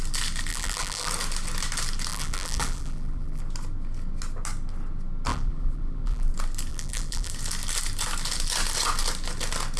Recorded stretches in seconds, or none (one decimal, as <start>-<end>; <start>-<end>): 0.0-0.5; 1.1-2.1; 3.4-5.3; 6.3-6.7; 7.3-9.8